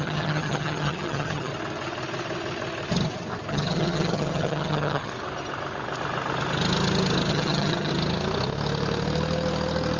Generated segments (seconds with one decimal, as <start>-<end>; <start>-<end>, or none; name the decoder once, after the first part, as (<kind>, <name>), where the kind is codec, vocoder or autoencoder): 0.0-1.5 (vocoder, HiFi-GAN); 3.5-5.1; 7.3-7.9

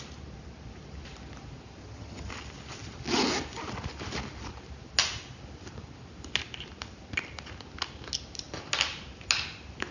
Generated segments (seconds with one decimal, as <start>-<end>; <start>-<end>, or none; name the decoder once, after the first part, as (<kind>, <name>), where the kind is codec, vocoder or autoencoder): 1.8-2.3 (vocoder, HiFi-GAN)

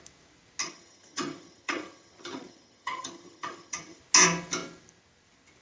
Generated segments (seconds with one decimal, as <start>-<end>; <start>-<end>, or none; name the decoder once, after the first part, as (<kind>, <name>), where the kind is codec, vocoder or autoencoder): 0.6-4.0 (vocoder, HiFi-GAN)

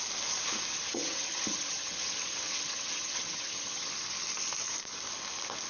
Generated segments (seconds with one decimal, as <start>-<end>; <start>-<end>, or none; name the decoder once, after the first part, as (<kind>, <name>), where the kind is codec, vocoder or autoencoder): 0.8-3.9 (vocoder, HiFi-GAN)

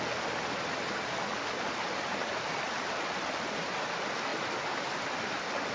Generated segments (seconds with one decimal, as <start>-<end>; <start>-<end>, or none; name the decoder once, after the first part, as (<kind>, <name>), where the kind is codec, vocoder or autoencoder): none